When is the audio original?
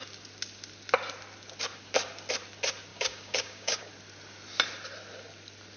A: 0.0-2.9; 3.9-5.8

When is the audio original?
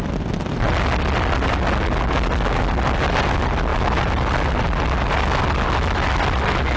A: 0.0-6.8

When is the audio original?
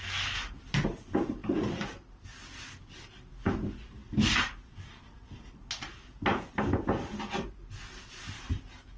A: 0.0-9.0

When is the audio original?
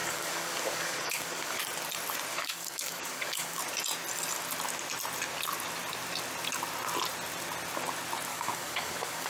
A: 1.6-2.3; 3.6-8.3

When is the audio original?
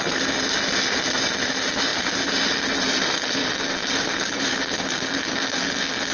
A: 0.0-6.1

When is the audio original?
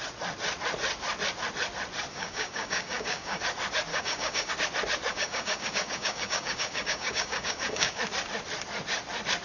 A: 0.0-2.1; 3.4-3.9; 4.5-5.1; 8.0-9.4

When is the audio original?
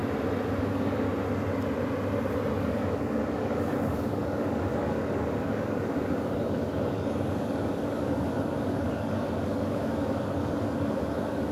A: 0.0-0.6; 1.1-2.6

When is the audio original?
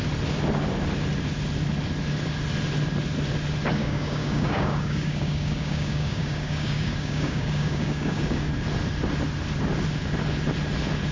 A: 0.0-3.8; 8.5-11.1